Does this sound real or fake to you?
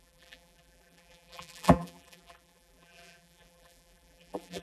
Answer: fake